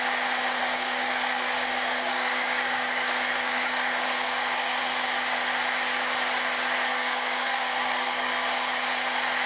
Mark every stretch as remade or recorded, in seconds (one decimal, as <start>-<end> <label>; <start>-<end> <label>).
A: 0.0-0.6 recorded; 0.6-4.8 remade; 4.8-6.9 recorded; 6.9-8.3 remade; 8.3-9.5 recorded